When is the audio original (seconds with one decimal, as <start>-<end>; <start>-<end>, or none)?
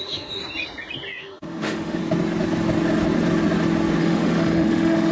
0.4-1.2; 2.0-4.0